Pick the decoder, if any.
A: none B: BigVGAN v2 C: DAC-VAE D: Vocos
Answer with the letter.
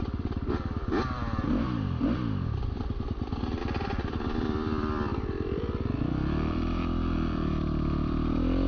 B